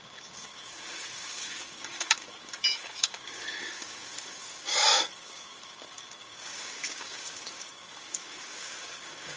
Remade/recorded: remade